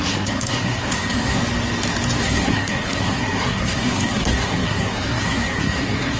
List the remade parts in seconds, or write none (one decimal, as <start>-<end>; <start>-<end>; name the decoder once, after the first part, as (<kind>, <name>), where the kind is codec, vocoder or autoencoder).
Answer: 0.0-1.4 (codec, SNAC); 2.2-6.2

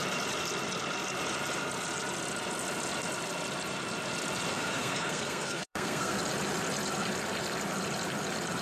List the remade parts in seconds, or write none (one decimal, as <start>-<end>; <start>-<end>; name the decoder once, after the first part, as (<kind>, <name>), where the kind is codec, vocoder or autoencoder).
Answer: 4.5-6.2 (codec, SNAC)

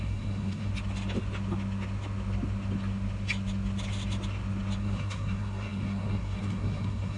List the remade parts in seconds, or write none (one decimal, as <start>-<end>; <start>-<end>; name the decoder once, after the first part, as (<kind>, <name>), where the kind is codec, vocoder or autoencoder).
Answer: 0.0-0.7 (codec, SNAC); 4.8-7.2

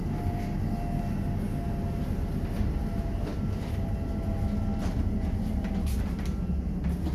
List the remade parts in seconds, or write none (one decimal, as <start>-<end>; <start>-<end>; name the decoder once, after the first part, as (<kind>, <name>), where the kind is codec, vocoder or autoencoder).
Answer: none

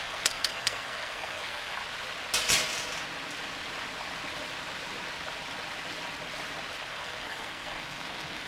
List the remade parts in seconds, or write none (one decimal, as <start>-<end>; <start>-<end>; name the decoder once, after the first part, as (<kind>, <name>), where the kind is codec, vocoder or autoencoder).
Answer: 0.0-1.8 (codec, SNAC); 6.9-8.5

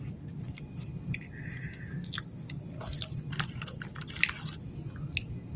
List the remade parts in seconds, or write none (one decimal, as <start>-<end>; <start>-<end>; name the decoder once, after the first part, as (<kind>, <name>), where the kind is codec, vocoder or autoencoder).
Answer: none